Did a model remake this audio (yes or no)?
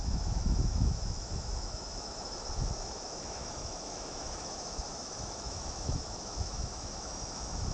yes